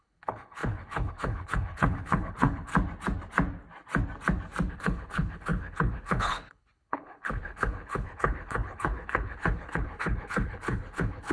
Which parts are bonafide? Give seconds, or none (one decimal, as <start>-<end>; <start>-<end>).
2.7-4.7